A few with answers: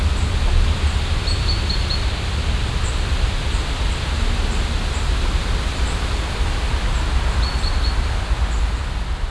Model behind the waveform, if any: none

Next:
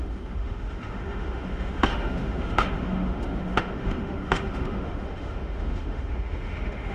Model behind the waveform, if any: autoencoder, DAC-VAE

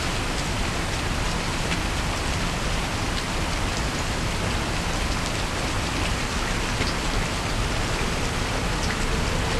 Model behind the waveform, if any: none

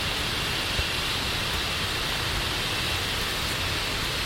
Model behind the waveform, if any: none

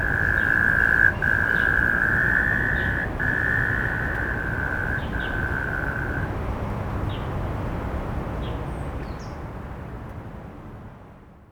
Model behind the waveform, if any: none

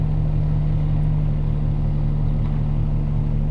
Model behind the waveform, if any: none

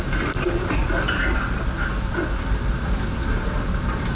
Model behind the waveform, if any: none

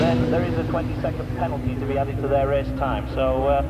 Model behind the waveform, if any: none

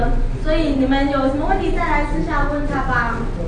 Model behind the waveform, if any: none